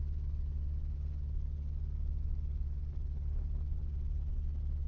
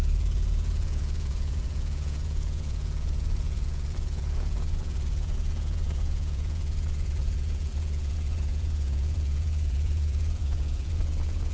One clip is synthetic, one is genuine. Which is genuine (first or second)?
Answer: first